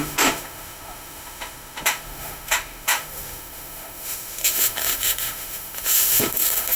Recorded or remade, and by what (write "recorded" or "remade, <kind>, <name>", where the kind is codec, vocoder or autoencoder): remade, autoencoder, DAC-VAE